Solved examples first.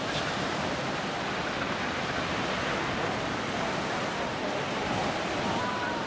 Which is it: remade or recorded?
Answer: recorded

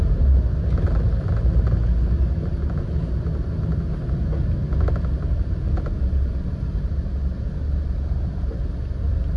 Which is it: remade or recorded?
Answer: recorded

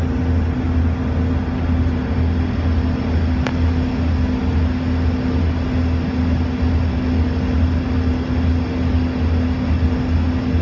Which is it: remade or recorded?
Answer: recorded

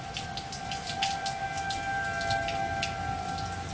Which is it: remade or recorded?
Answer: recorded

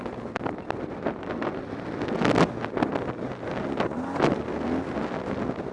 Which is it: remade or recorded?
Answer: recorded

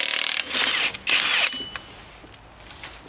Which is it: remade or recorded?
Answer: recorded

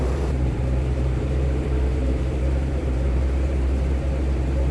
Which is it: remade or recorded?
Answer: remade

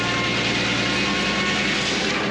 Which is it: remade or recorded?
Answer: recorded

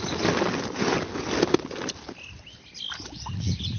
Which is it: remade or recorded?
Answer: recorded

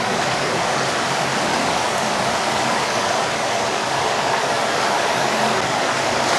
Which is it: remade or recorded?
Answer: remade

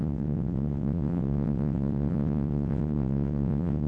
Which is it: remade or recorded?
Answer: remade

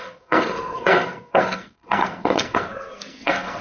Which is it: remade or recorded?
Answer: remade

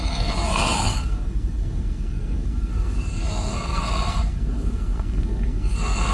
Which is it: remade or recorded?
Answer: remade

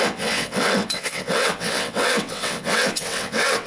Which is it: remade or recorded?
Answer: remade